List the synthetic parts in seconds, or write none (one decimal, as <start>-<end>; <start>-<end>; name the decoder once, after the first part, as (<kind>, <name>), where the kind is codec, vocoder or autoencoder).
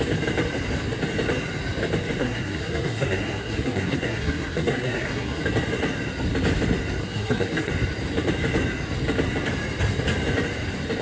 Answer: 2.2-5.4 (codec, SNAC); 7.0-7.7